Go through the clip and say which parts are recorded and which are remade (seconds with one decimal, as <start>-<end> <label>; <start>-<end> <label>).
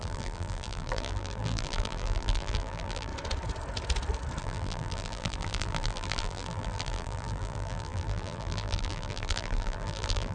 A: 0.0-3.1 remade; 3.1-4.4 recorded; 4.4-10.3 remade